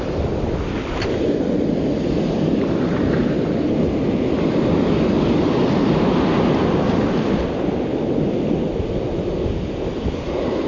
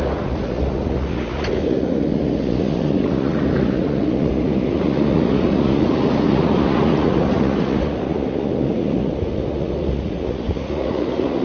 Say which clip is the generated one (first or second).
second